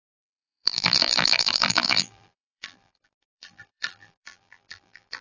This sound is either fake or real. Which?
fake